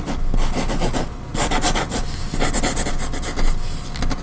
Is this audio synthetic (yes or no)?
no